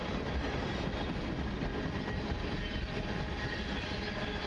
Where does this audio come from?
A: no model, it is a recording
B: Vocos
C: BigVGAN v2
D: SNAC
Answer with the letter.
A